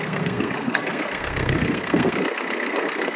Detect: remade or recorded remade